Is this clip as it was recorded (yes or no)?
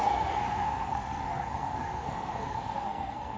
no